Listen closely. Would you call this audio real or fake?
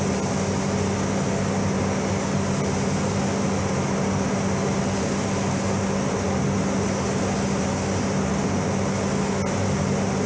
real